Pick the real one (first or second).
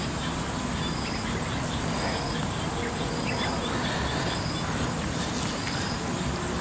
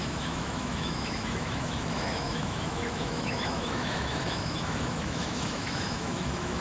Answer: first